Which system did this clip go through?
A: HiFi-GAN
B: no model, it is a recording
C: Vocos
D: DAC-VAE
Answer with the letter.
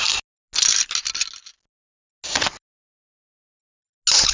B